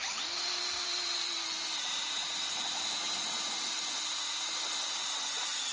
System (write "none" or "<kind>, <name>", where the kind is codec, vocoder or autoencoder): vocoder, BigVGAN v2